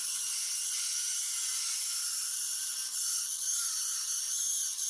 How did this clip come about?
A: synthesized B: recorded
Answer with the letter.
B